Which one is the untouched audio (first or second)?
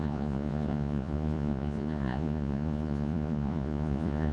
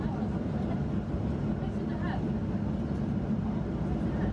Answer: second